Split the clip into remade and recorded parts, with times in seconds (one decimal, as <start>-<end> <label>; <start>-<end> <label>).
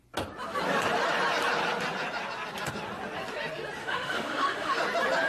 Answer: 0.0-3.8 recorded; 3.8-4.8 remade; 4.8-5.3 recorded